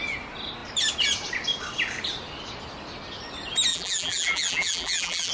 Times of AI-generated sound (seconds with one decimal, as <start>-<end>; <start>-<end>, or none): 3.7-5.3